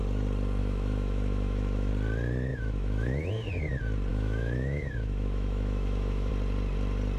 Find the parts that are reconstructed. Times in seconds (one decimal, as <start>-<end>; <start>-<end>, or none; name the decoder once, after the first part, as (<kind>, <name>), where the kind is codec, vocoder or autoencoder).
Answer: 0.6-1.9 (autoencoder, DAC-VAE); 2.5-3.3; 4.1-6.3